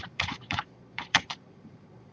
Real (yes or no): no